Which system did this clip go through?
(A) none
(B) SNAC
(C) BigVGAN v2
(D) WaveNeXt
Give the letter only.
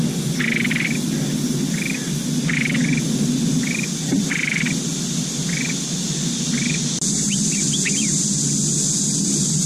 A